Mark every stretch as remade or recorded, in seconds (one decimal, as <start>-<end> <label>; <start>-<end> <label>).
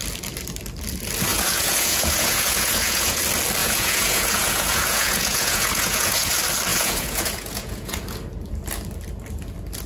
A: 0.0-1.3 recorded; 1.3-3.2 remade; 3.2-3.6 recorded; 3.6-6.3 remade; 6.3-6.7 recorded; 6.7-8.0 remade; 8.0-9.9 recorded